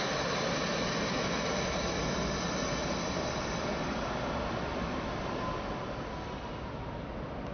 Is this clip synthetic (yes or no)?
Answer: no